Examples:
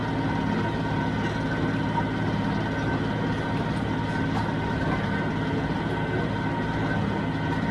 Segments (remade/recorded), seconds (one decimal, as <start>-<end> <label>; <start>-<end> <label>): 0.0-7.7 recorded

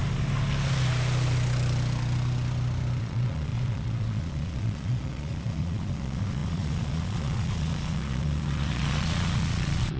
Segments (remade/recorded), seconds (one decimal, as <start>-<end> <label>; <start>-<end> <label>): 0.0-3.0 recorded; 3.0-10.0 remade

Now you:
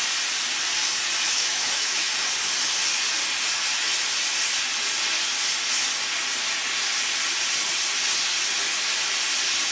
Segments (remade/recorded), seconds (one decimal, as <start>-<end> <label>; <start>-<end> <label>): 0.0-1.2 recorded; 1.2-2.1 remade; 2.1-9.7 recorded